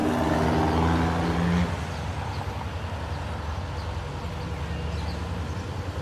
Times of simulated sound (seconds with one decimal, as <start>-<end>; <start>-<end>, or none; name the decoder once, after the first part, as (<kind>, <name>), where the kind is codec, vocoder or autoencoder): none